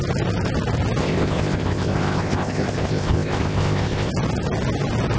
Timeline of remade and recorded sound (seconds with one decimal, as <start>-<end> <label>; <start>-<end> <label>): 0.0-1.0 recorded; 1.0-4.1 remade; 4.1-5.2 recorded